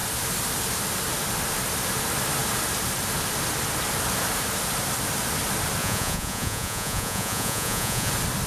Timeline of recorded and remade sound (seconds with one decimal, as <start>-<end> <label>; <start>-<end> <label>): 0.0-5.8 recorded; 5.8-8.1 remade; 8.1-8.5 recorded